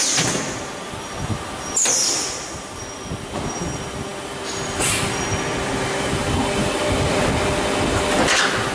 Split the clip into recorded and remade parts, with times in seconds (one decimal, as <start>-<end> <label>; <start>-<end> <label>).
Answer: 0.0-8.7 recorded